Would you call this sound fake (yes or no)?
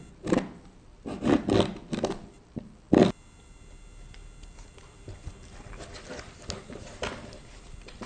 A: no